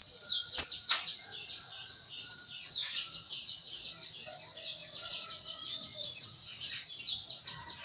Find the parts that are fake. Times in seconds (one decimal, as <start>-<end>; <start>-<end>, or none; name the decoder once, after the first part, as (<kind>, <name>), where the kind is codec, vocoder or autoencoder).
0.0-3.8 (vocoder, Vocos); 4.8-6.7